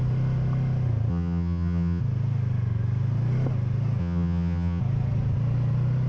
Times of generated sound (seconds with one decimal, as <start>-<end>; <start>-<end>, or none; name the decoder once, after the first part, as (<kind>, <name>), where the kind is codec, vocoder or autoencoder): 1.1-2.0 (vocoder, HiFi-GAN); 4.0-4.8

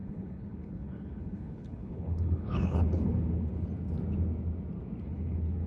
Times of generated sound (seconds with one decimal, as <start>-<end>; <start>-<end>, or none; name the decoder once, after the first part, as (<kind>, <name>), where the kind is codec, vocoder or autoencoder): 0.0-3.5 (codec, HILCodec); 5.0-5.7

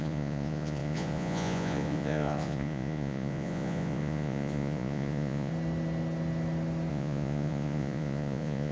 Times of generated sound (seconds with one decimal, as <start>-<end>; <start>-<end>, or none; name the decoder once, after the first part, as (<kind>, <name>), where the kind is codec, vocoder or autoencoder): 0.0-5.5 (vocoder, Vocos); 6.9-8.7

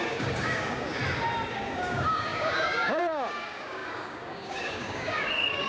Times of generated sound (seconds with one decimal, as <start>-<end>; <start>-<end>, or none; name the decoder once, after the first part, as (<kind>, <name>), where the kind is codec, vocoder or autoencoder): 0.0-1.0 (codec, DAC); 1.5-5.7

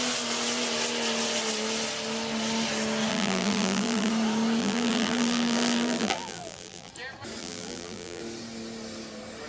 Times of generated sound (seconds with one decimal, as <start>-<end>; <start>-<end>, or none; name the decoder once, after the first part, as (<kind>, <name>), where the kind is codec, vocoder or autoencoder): 3.1-4.1 (vocoder, BigVGAN v2); 4.6-6.9; 7.4-8.2

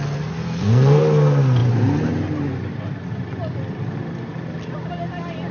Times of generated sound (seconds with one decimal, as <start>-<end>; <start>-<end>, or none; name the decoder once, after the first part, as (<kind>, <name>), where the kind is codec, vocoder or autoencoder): 0.4-1.0 (codec, SNAC)

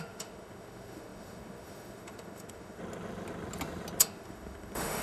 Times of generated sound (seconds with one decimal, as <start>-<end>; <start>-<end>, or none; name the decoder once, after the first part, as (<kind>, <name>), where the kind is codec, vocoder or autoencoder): 0.0-2.8 (autoencoder, DAC-VAE); 4.0-5.0

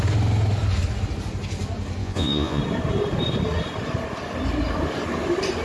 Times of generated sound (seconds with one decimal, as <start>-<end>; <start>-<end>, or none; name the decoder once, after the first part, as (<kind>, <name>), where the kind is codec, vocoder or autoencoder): 2.0-2.6 (vocoder, Vocos)